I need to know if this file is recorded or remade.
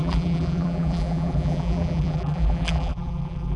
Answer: remade